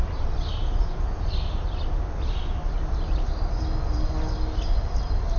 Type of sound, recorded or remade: recorded